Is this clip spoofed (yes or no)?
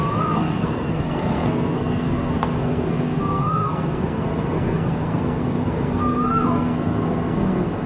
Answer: yes